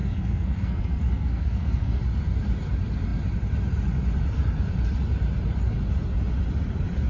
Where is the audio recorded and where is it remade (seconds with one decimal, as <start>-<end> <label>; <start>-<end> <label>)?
0.0-2.0 remade; 2.0-7.1 recorded